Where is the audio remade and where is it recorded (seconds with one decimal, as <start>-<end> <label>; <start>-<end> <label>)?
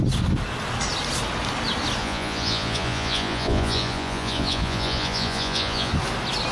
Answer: 0.0-2.0 recorded; 2.0-5.9 remade; 5.9-6.5 recorded